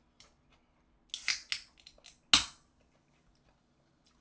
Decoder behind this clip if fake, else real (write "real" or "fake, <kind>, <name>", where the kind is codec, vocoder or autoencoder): real